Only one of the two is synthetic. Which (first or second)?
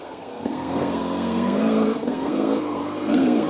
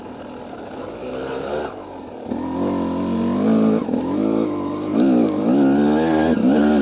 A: first